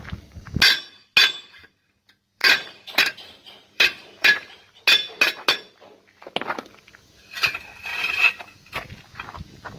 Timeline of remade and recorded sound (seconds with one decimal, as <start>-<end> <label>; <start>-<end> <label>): 0.0-1.2 recorded; 1.2-1.9 remade; 1.9-2.4 recorded; 2.4-4.8 remade; 4.8-7.9 recorded; 7.9-8.4 remade; 8.4-9.8 recorded